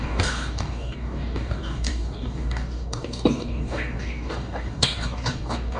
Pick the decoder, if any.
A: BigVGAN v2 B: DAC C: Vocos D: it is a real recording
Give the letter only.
B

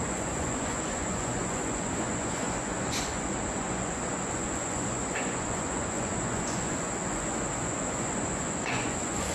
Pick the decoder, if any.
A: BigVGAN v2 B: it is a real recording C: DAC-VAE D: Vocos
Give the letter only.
D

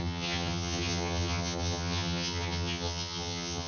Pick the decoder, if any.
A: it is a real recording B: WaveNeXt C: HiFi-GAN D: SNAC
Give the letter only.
C